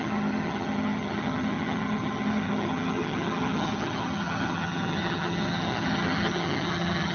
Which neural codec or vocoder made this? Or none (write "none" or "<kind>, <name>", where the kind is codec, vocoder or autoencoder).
vocoder, HiFi-GAN